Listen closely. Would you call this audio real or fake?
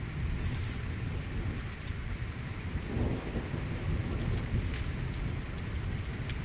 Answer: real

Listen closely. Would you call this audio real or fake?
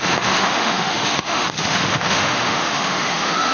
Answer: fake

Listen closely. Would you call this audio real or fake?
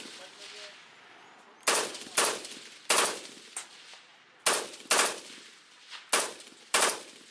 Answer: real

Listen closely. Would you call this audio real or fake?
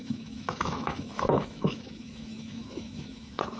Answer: fake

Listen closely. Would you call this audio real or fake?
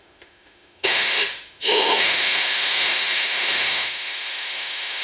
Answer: fake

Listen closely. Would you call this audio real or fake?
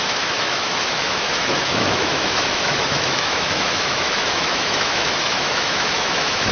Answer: fake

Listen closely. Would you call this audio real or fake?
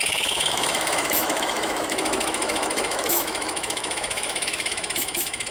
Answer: fake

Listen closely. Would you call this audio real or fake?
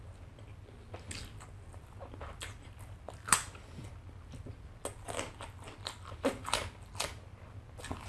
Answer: real